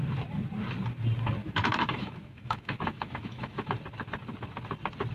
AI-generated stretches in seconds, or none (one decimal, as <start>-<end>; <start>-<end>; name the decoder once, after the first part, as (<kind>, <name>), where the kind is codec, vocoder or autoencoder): 1.4-3.7 (autoencoder, DAC-VAE)

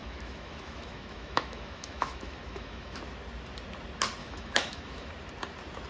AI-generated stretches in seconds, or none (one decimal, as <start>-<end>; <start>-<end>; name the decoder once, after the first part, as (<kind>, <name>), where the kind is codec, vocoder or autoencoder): 0.0-3.0 (autoencoder, DAC-VAE); 4.2-5.1

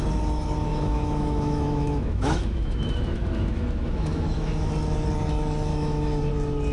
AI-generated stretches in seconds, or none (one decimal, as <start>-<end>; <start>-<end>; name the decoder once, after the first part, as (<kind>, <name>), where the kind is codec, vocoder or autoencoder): 0.7-4.7 (autoencoder, DAC-VAE); 5.7-6.3

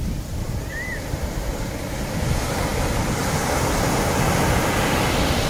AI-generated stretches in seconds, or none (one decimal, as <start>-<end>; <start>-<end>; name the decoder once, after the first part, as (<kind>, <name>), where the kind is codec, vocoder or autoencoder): none

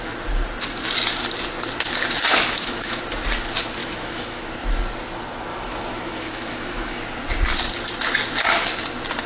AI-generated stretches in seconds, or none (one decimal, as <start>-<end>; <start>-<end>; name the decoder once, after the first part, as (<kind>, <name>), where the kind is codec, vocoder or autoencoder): 2.3-3.0 (autoencoder, DAC-VAE); 3.8-4.4; 5.5-7.0

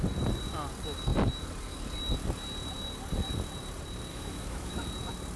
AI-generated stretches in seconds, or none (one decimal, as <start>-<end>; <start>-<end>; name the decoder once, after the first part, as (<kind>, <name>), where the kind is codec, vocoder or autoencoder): 4.1-4.7 (autoencoder, DAC-VAE)